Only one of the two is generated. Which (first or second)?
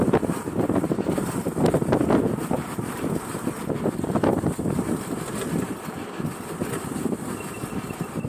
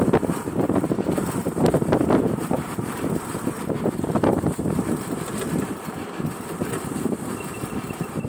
second